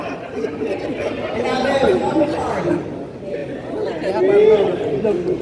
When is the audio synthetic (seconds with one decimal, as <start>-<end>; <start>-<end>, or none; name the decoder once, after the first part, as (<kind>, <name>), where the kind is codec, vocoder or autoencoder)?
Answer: none